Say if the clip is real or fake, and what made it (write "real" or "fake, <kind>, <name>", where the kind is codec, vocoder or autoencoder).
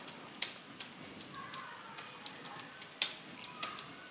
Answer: real